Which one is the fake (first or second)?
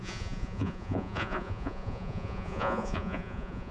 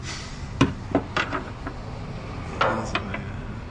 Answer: first